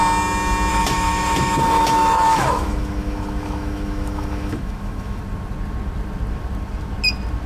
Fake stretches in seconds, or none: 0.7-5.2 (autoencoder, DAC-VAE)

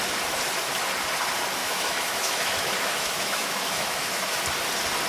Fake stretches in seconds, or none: 1.6-4.4 (autoencoder, DAC-VAE)

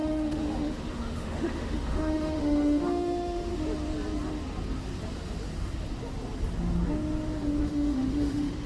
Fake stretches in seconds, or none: 0.0-3.5 (autoencoder, DAC-VAE); 7.6-8.7

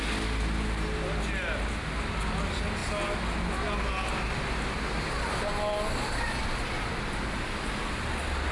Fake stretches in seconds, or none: none

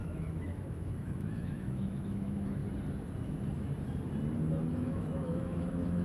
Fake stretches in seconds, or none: 0.0-2.6 (autoencoder, DAC-VAE); 4.7-6.0